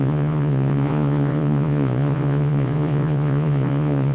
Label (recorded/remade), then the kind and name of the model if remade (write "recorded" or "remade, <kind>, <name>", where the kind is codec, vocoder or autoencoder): remade, vocoder, Vocos